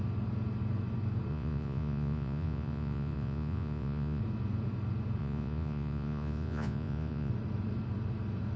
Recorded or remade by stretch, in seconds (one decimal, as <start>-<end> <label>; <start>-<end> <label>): 0.0-1.3 recorded; 1.3-4.2 remade; 4.2-5.2 recorded; 5.2-7.3 remade; 7.3-8.6 recorded